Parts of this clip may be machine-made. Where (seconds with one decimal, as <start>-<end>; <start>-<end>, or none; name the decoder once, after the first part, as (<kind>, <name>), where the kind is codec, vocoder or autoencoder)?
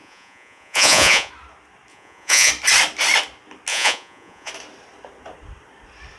0.0-1.3 (vocoder, Vocos); 1.9-2.5; 3.7-4.5